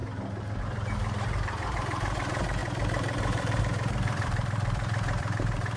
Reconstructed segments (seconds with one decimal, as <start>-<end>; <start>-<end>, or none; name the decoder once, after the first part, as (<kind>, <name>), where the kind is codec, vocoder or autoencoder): 0.6-5.8 (vocoder, BigVGAN v2)